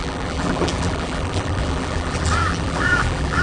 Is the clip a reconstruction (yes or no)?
yes